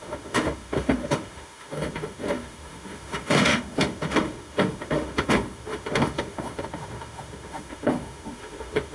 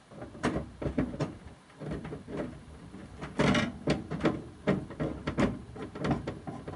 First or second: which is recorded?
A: second